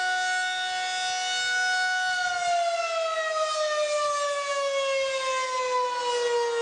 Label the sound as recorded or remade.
recorded